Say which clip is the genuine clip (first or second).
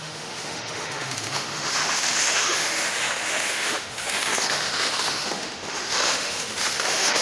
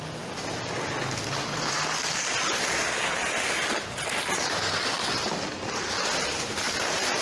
second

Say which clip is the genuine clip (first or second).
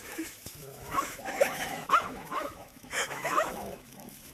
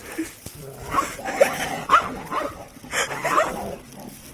second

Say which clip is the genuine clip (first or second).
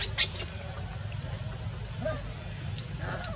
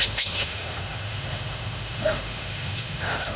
first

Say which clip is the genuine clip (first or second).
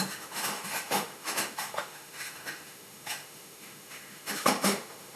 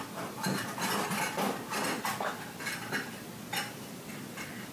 second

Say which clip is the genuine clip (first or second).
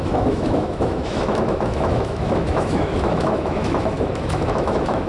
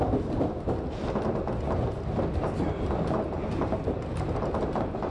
second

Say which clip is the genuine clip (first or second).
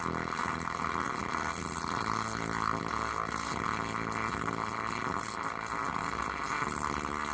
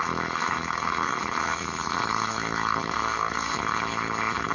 first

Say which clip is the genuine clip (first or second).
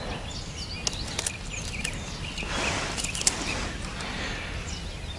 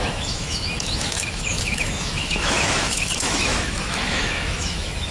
first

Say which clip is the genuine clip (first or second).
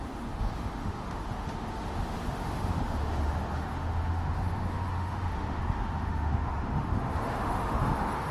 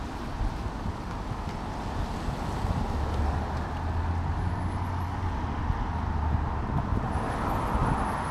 second